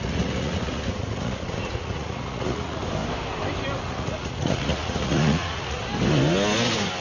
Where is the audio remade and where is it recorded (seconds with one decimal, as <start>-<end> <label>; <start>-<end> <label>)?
0.0-2.8 remade; 2.8-3.8 recorded; 3.8-5.8 remade; 5.8-7.0 recorded